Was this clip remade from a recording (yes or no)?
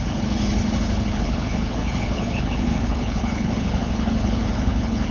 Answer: yes